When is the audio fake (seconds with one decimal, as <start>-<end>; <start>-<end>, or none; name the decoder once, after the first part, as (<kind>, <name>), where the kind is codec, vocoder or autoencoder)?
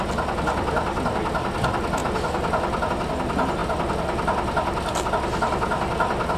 none